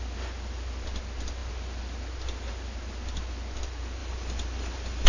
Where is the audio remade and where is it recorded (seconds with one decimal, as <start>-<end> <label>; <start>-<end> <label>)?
0.0-4.0 recorded; 4.0-5.1 remade